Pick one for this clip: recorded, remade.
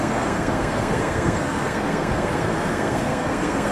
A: remade